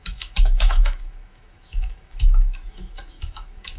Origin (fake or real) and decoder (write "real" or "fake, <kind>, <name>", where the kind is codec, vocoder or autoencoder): fake, autoencoder, DAC-VAE